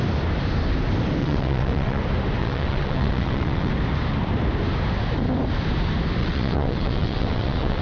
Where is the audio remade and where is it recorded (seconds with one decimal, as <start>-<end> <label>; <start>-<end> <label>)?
0.0-1.2 recorded; 1.2-2.0 remade; 2.0-2.4 recorded; 2.4-3.7 remade; 3.7-6.2 recorded; 6.2-7.8 remade